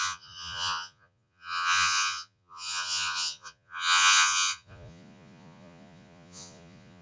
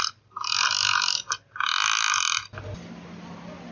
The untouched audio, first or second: second